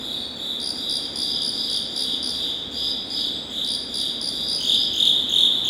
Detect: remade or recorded recorded